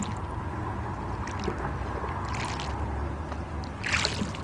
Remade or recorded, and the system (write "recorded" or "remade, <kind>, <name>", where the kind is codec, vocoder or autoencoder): recorded